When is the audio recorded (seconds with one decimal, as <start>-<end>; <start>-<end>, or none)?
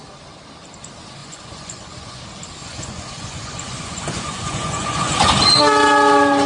0.0-1.2; 2.2-2.6; 5.3-6.5